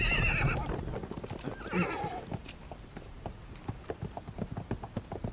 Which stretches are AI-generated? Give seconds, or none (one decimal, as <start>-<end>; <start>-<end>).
none